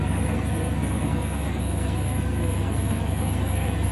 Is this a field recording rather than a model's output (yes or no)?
no